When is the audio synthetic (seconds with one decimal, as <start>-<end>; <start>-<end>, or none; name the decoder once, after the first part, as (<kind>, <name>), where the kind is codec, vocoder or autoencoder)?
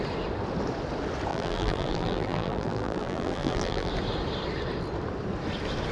1.3-3.9 (vocoder, BigVGAN v2)